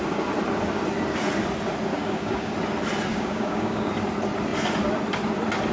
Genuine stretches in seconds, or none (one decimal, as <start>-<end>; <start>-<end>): 0.0-1.9; 2.5-3.1; 3.9-5.7